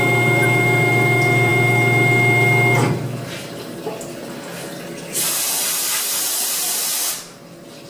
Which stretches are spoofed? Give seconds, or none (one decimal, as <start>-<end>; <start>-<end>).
none

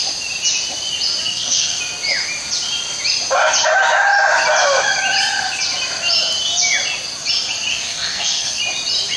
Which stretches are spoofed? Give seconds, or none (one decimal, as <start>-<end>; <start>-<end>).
1.2-1.8; 7.7-8.6

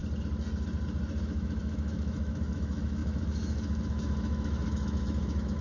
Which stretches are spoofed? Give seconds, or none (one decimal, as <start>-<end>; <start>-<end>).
1.2-5.6